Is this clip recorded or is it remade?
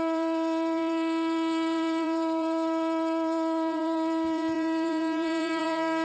remade